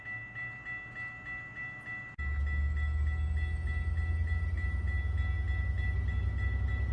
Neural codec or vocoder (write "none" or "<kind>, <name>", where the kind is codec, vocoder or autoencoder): none